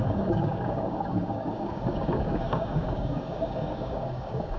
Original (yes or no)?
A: no